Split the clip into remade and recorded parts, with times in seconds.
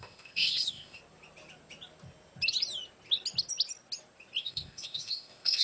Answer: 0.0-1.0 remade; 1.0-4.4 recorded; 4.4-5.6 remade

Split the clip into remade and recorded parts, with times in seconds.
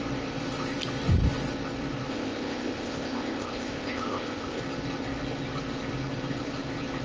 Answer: 0.0-2.1 recorded; 2.1-4.6 remade; 4.6-7.0 recorded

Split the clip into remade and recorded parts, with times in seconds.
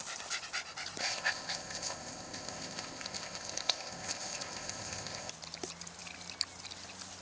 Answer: 0.0-1.0 recorded; 1.0-5.3 remade; 5.3-7.2 recorded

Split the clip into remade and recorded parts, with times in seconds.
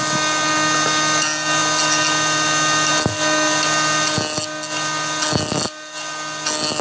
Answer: 0.0-6.8 recorded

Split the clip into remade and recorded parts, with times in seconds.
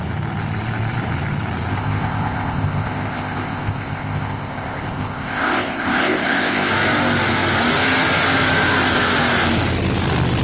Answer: 0.0-1.7 recorded; 1.7-6.7 remade; 6.7-10.4 recorded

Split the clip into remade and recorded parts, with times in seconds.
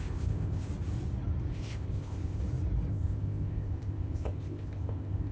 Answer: 0.0-0.7 remade; 0.7-1.5 recorded; 1.5-2.4 remade; 2.4-2.9 recorded; 2.9-5.3 remade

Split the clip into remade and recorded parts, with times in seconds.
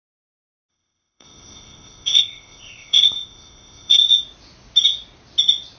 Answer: 0.0-0.7 recorded; 0.7-4.2 remade; 4.2-5.8 recorded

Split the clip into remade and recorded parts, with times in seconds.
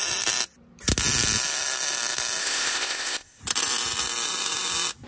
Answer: 0.0-2.4 recorded; 2.4-3.4 remade; 3.4-5.1 recorded